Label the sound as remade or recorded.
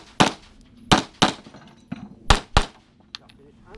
recorded